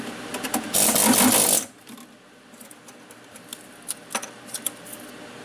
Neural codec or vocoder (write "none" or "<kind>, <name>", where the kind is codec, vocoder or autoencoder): none